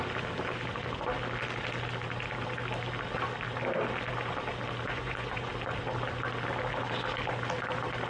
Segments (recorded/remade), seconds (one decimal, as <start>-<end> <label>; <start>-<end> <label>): 0.0-4.9 recorded; 4.9-5.5 remade; 5.5-8.1 recorded